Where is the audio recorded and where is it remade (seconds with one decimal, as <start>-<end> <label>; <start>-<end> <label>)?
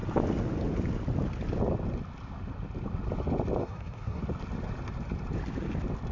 0.0-3.6 recorded; 3.6-4.2 remade; 4.2-6.1 recorded